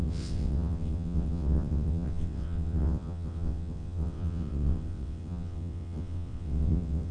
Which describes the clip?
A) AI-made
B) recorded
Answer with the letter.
A